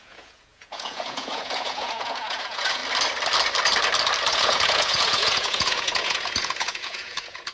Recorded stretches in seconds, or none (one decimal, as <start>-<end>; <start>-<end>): 2.8-4.3